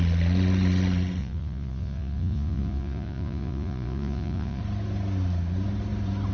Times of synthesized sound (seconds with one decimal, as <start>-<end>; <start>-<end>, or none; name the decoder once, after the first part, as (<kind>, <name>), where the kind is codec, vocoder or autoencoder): 1.2-4.6 (vocoder, Vocos)